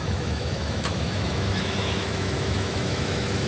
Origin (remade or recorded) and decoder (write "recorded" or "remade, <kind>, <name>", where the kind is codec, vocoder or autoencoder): remade, autoencoder, DAC-VAE